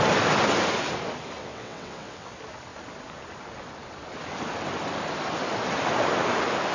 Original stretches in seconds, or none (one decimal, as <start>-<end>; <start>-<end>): 0.0-1.4; 2.3-6.7